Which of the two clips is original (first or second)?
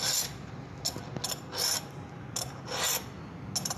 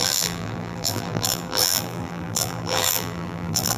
first